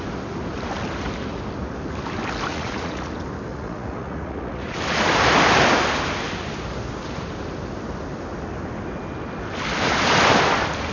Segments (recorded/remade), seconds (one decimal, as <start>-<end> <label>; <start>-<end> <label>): 0.0-2.5 recorded; 2.5-3.1 remade; 3.1-3.5 recorded; 3.5-4.8 remade; 4.8-10.9 recorded